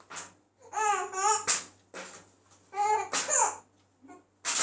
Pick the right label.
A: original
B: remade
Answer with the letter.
A